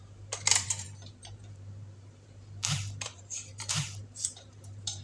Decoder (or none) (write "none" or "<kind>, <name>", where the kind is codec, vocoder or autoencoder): vocoder, BigVGAN v2